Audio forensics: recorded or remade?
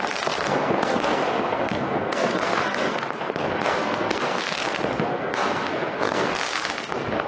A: remade